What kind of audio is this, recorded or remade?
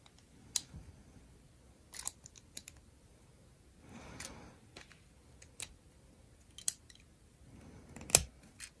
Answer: recorded